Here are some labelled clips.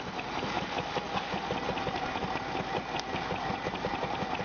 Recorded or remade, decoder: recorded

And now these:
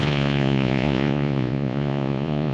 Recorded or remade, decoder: remade, vocoder, Vocos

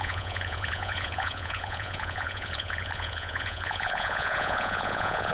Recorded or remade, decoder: remade, vocoder, Vocos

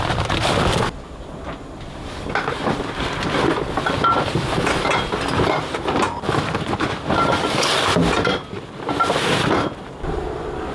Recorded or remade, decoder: recorded